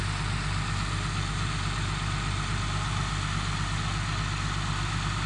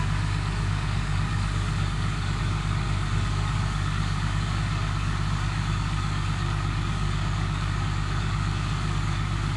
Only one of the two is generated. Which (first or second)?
second